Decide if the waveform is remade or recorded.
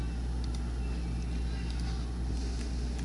recorded